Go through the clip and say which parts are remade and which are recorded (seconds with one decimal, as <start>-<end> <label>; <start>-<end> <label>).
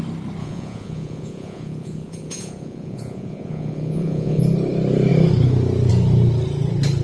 0.0-0.4 recorded; 0.4-4.4 remade; 4.4-7.0 recorded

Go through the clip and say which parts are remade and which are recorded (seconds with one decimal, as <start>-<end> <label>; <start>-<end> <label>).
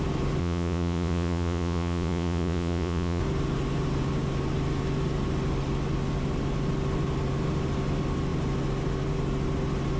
0.0-0.4 recorded; 0.4-3.2 remade; 3.2-10.0 recorded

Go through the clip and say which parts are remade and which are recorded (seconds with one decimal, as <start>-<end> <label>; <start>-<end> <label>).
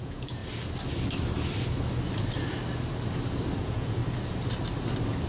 0.0-0.4 remade; 0.4-3.6 recorded; 3.6-4.0 remade; 4.0-5.3 recorded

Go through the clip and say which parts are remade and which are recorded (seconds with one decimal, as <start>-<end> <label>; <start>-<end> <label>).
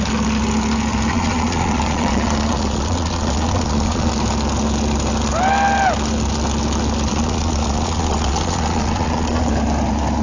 0.0-1.1 recorded; 1.1-4.1 remade; 4.1-7.1 recorded; 7.1-9.5 remade; 9.5-10.2 recorded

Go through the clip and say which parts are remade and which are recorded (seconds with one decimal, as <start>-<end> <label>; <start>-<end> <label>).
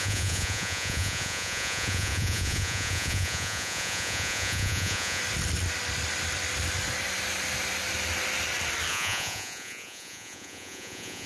0.0-5.2 remade; 5.2-8.9 recorded; 8.9-11.3 remade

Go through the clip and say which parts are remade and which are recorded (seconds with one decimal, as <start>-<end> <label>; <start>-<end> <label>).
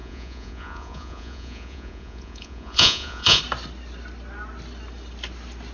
0.0-3.4 remade; 3.4-5.7 recorded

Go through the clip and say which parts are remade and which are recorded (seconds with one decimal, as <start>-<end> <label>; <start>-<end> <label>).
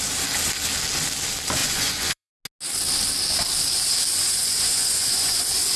0.0-1.6 recorded; 1.6-2.3 remade; 2.3-4.1 recorded; 4.1-5.8 remade